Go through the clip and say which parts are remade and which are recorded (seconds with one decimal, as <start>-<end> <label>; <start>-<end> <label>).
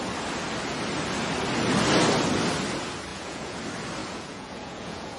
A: 0.0-3.1 recorded; 3.1-3.6 remade; 3.6-4.0 recorded; 4.0-5.2 remade